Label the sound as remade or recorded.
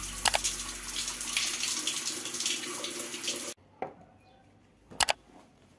recorded